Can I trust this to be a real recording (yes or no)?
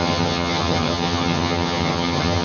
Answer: no